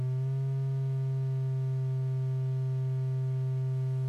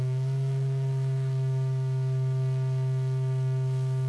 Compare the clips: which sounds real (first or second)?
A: first